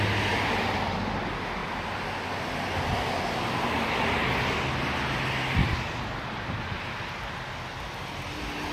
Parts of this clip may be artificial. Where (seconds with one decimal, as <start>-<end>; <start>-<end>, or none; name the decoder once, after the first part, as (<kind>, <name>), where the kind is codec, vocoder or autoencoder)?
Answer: 0.0-1.6 (vocoder, BigVGAN v2); 4.6-8.7